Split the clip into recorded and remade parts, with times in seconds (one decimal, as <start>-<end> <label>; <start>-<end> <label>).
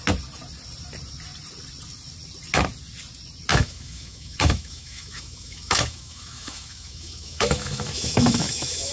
0.0-3.5 recorded; 3.5-8.9 remade